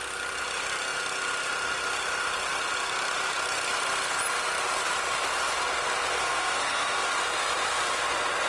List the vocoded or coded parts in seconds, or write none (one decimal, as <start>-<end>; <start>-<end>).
6.1-7.1